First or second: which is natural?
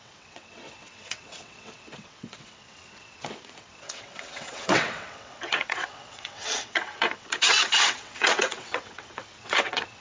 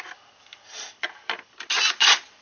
second